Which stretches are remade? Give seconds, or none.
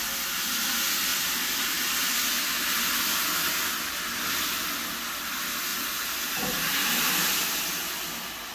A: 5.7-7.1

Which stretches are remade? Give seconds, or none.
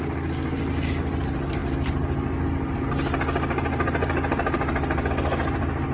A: none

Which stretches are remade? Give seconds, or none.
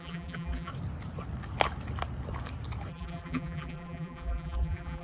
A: 0.0-0.7; 2.9-5.0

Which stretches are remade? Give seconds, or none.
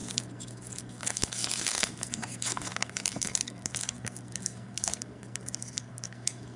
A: 0.0-6.6